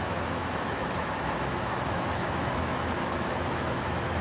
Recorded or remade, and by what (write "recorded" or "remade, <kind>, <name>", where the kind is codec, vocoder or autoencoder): remade, autoencoder, DAC-VAE